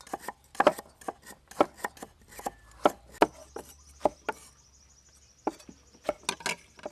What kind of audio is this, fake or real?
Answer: real